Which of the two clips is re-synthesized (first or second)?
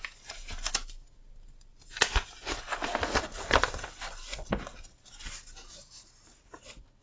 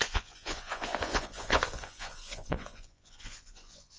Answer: second